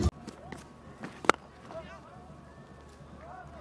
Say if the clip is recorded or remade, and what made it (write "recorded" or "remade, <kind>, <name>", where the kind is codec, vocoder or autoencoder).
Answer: recorded